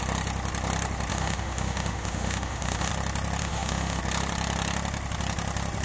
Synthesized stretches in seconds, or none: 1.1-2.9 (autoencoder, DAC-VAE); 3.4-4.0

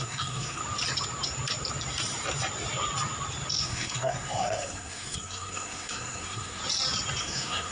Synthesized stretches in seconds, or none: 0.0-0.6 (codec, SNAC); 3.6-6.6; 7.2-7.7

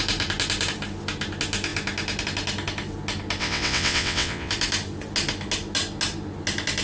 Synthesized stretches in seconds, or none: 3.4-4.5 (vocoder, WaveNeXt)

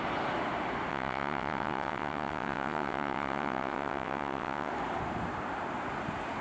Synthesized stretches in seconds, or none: 0.9-4.7 (vocoder, WaveNeXt)